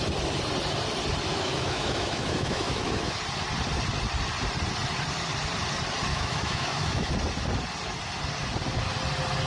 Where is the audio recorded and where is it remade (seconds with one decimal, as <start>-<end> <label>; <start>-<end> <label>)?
0.0-1.3 recorded; 1.3-3.2 remade; 3.2-6.1 recorded; 6.1-7.1 remade; 7.1-9.5 recorded